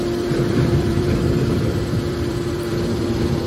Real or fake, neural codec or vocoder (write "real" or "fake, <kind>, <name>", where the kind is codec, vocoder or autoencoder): fake, vocoder, BigVGAN v2